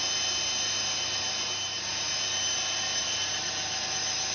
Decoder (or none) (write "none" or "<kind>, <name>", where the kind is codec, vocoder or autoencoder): none